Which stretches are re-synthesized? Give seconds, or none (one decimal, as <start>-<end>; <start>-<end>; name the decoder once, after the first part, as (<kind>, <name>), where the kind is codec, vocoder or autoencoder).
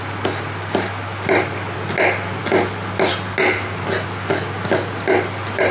none